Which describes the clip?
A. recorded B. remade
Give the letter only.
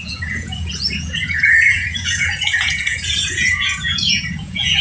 B